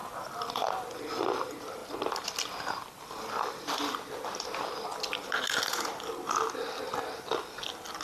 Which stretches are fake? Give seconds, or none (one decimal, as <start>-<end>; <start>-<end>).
none